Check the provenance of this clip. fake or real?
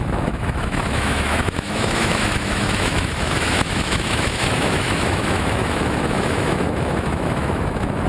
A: fake